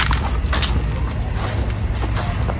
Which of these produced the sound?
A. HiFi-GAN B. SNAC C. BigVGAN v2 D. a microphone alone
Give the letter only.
D